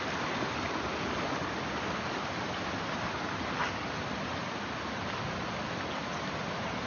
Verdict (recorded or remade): recorded